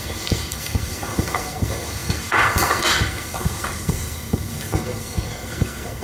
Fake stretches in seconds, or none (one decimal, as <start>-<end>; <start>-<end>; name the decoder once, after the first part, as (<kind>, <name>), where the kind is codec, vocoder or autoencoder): 0.0-6.0 (codec, SNAC)